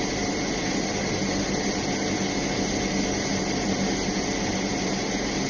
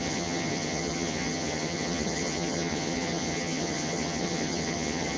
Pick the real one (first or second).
first